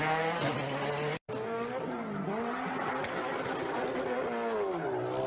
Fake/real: real